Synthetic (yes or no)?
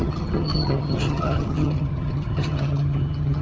yes